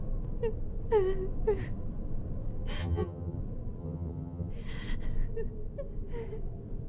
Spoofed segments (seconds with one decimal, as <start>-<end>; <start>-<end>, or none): 2.8-3.4; 3.8-4.5